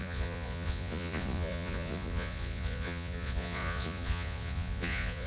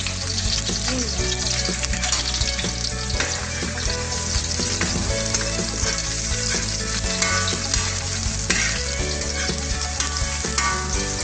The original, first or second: second